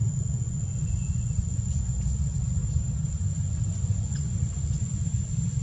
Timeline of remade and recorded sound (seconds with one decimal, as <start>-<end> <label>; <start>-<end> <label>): 0.0-2.6 remade; 2.6-3.1 recorded; 3.1-5.6 remade